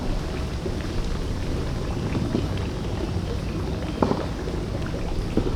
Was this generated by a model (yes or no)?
no